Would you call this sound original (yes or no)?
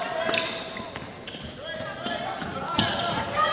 yes